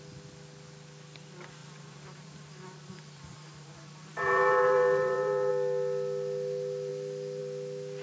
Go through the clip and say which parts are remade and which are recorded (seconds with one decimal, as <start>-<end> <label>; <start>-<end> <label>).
0.0-1.6 recorded; 1.6-5.5 remade; 5.5-8.0 recorded